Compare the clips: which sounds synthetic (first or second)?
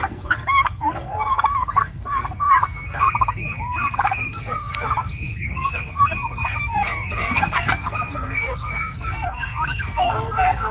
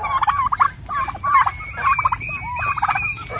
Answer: first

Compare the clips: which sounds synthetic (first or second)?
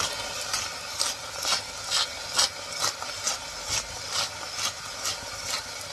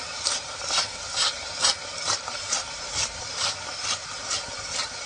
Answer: second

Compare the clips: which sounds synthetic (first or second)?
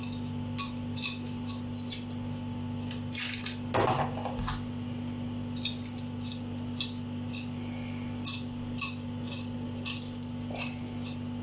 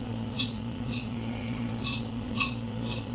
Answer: second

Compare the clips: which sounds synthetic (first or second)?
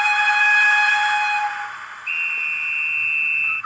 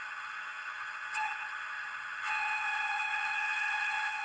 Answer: second